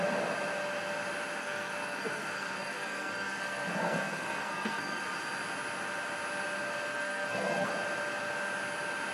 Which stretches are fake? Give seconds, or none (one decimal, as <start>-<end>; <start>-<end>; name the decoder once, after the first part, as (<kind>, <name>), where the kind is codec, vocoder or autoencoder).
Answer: 1.4-5.0 (codec, SNAC); 6.9-7.7